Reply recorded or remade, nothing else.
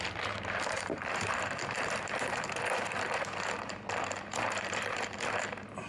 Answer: remade